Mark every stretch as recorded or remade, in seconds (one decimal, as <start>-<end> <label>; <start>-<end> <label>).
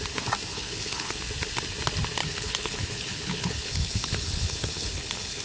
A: 0.0-0.5 recorded; 0.5-1.2 remade; 1.2-2.2 recorded; 2.2-5.4 remade